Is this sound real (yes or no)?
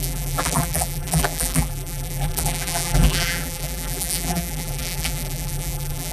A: no